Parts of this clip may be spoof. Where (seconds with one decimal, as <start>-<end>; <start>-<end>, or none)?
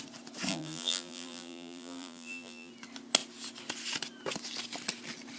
0.5-2.7